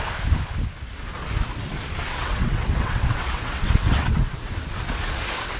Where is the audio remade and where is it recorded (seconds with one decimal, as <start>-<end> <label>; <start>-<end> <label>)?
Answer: 0.0-2.1 recorded; 2.1-4.5 remade; 4.5-5.6 recorded

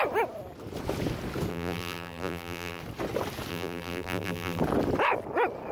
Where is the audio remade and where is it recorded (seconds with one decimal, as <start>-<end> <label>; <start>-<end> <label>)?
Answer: 0.0-1.5 recorded; 1.5-2.8 remade; 2.8-3.5 recorded; 3.5-4.6 remade; 4.6-5.7 recorded